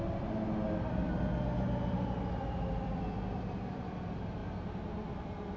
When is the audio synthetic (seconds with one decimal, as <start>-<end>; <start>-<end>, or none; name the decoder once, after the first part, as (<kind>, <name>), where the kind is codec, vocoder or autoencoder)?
none

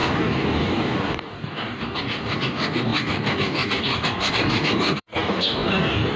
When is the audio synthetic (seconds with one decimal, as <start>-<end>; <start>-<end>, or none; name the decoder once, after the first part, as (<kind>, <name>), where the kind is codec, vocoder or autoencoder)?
0.0-6.2 (codec, DAC)

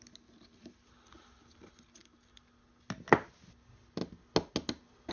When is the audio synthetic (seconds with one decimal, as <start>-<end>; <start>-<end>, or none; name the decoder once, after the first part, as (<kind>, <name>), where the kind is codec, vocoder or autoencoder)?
none

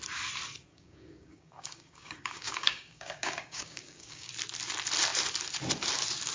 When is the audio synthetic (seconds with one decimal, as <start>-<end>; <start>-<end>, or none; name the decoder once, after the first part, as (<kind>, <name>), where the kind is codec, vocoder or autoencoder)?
0.7-4.3 (codec, DAC)

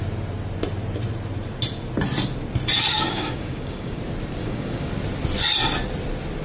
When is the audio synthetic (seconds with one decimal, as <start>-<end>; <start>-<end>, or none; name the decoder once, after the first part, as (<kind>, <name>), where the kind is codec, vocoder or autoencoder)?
2.9-4.0 (codec, DAC); 4.4-4.9

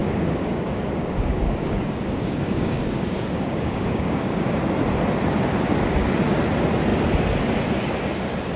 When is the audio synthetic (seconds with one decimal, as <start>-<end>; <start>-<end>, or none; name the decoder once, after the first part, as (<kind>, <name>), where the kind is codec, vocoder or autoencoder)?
0.0-4.4 (codec, DAC)

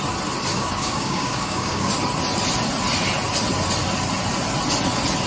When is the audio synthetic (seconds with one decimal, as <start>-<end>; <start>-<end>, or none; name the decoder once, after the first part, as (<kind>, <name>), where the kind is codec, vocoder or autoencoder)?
0.5-1.9 (codec, DAC)

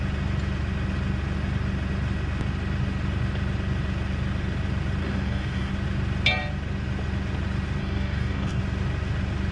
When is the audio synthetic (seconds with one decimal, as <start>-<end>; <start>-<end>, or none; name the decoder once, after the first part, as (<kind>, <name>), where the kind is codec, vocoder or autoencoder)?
5.0-5.7 (codec, DAC); 7.8-8.6